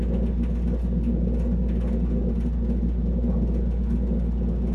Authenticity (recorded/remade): recorded